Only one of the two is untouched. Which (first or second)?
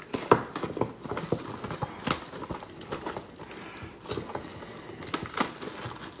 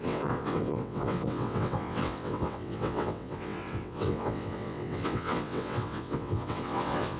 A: first